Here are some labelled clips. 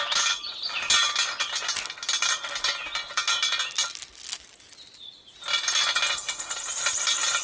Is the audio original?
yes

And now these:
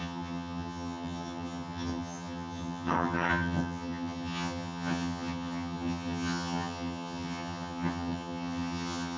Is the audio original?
no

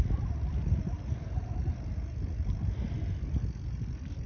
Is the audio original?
yes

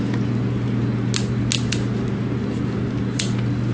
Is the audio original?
yes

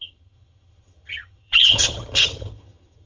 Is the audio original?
no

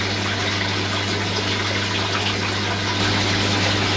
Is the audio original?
yes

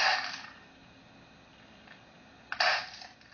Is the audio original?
yes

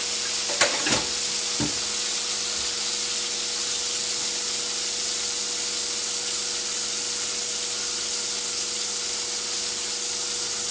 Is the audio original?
yes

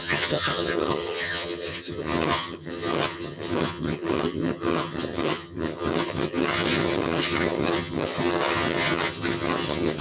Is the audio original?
no